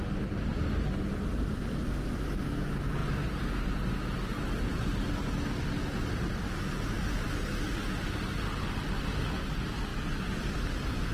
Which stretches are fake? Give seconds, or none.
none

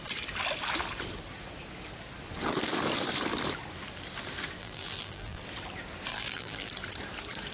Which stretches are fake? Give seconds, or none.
4.6-5.4 (vocoder, BigVGAN v2); 6.1-6.7

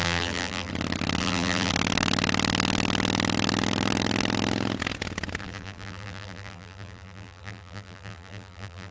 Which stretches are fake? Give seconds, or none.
0.0-0.7 (vocoder, BigVGAN v2); 1.2-1.7; 5.4-8.9